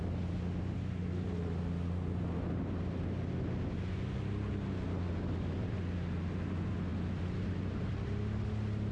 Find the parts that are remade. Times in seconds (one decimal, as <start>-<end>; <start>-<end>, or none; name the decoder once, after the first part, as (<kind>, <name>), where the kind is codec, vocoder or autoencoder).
none